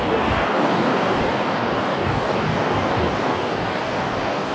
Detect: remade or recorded remade